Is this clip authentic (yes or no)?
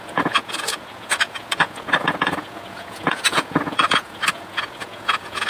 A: no